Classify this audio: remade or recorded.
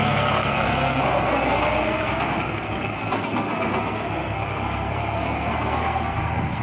remade